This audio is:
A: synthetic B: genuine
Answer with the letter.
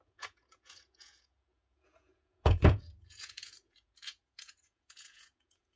A